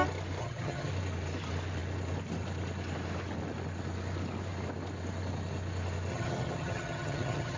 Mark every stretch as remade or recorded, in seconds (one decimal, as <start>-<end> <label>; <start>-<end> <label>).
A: 0.0-0.4 recorded; 0.4-0.9 remade; 0.9-6.1 recorded; 6.1-7.6 remade